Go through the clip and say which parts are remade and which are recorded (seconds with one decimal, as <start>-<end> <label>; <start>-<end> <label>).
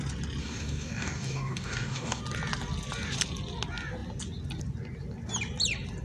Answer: 0.0-0.4 recorded; 0.4-2.2 remade; 2.2-6.0 recorded